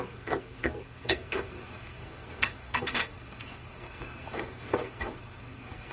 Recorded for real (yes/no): no